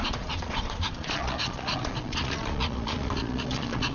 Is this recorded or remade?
remade